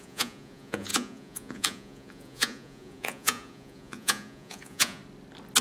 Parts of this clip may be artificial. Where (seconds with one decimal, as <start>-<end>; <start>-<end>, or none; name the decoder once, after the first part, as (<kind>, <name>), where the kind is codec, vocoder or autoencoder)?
0.0-5.0 (vocoder, Vocos)